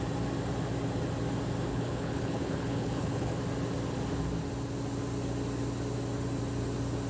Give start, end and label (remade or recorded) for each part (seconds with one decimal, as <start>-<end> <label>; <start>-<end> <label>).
0.0-1.7 recorded; 1.7-3.3 remade; 3.3-7.1 recorded